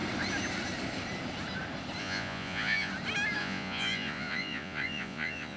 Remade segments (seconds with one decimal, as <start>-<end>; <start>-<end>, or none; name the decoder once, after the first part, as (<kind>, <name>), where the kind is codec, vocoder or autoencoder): 2.0-2.9 (vocoder, Vocos); 3.4-5.6